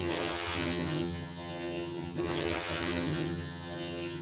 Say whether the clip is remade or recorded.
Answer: remade